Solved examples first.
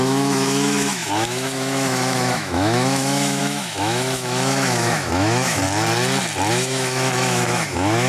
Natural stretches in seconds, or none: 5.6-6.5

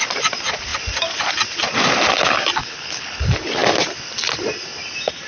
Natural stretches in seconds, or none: 0.0-2.6; 3.2-5.3

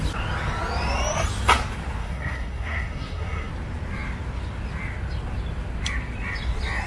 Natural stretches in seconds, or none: 0.0-2.0; 3.5-6.9

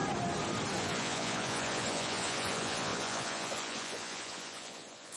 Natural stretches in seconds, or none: 0.0-0.8

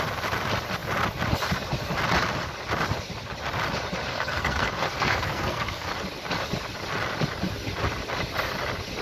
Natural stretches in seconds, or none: 0.0-4.1; 5.9-9.0